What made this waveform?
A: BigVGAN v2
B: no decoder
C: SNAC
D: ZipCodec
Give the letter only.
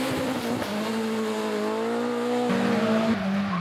B